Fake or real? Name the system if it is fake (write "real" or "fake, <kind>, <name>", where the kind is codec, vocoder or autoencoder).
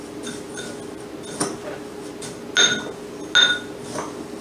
real